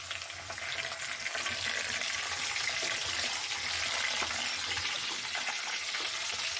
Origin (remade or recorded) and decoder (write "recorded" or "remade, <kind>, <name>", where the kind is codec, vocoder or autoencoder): recorded